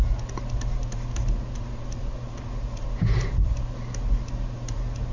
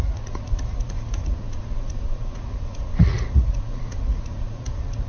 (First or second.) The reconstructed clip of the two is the second